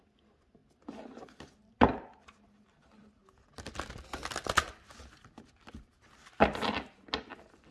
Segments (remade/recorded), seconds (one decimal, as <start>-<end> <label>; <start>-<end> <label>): 0.0-7.7 recorded